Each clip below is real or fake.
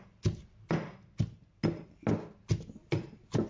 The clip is real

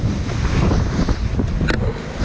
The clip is real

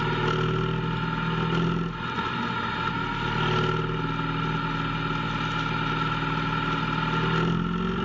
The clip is real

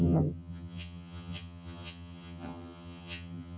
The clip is fake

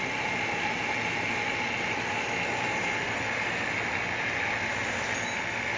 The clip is real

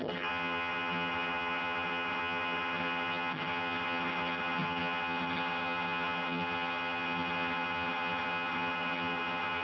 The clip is fake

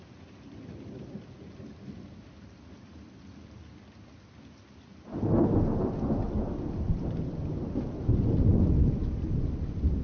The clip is real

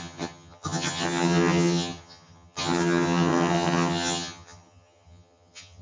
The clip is fake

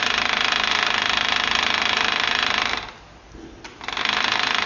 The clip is real